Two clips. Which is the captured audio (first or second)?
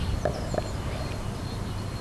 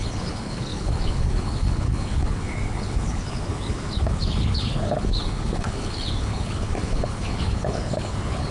first